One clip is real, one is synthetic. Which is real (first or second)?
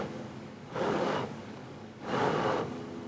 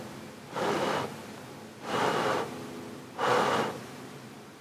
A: second